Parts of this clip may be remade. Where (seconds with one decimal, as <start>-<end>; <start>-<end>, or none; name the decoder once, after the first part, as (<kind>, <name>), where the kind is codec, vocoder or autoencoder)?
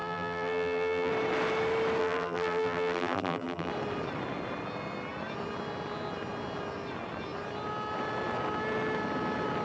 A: 0.0-1.1 (vocoder, BigVGAN v2); 2.0-3.7